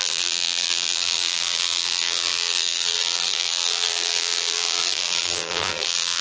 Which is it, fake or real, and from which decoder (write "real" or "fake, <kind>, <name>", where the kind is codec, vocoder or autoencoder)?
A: fake, vocoder, BigVGAN v2